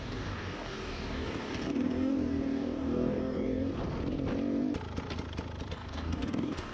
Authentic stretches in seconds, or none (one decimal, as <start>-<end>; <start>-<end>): 3.7-5.7